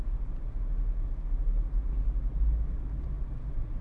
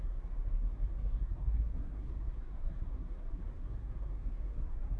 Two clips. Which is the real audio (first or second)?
first